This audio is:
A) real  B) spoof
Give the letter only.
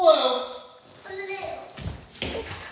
A